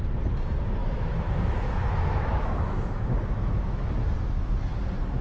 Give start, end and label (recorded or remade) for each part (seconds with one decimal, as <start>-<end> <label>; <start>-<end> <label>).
0.0-0.8 recorded; 0.8-3.9 remade; 3.9-5.2 recorded